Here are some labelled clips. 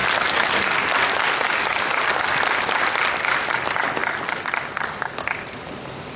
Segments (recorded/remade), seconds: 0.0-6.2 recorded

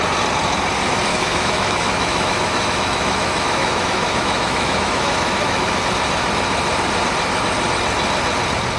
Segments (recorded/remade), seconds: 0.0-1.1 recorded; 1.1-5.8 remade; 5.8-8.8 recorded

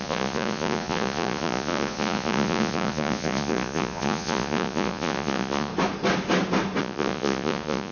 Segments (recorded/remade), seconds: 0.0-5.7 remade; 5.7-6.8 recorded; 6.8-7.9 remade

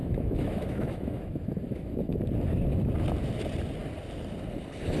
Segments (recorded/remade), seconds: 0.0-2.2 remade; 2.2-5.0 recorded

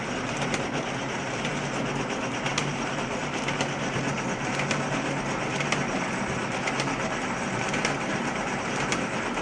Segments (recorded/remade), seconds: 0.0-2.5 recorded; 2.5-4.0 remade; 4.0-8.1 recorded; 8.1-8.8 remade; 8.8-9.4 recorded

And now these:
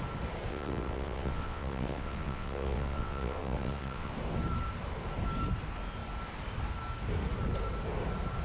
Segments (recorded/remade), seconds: 0.0-0.5 recorded; 0.5-4.1 remade; 4.1-8.4 recorded